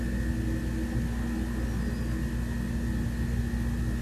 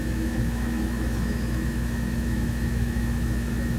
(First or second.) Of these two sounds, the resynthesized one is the second